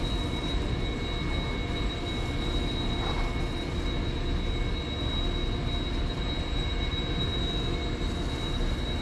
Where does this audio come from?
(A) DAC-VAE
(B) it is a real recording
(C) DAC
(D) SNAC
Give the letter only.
B